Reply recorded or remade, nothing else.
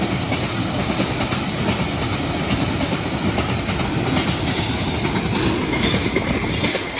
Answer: recorded